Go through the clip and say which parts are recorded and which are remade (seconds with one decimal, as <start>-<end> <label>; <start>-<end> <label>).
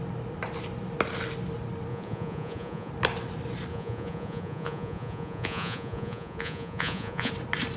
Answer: 0.0-1.9 recorded; 1.9-2.9 remade; 2.9-3.7 recorded; 3.7-7.3 remade; 7.3-7.8 recorded